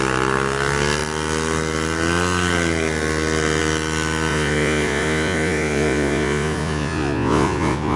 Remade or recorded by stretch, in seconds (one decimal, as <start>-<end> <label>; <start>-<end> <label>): 0.0-4.3 recorded; 4.3-8.0 remade